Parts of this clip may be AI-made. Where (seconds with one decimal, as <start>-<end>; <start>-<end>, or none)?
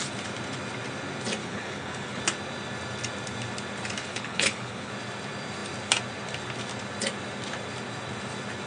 1.4-2.2; 4.0-4.9